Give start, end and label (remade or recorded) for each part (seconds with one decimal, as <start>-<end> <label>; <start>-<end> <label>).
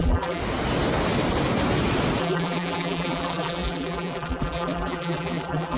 0.0-0.4 remade; 0.4-2.2 recorded; 2.2-5.8 remade